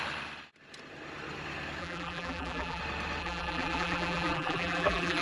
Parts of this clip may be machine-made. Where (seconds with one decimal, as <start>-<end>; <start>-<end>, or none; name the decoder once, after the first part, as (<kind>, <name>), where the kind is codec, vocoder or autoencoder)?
1.8-2.8 (vocoder, BigVGAN v2); 3.2-5.2